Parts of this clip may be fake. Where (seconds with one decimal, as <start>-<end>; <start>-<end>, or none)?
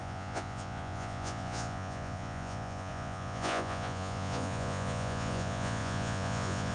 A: 0.0-6.7